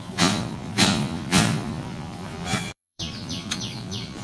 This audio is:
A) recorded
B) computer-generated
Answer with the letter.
B